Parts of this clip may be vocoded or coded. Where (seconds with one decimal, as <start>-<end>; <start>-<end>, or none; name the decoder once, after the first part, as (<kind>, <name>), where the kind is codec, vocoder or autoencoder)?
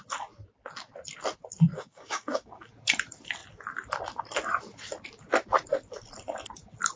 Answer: 1.7-2.6 (codec, DAC)